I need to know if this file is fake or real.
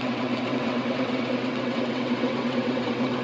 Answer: fake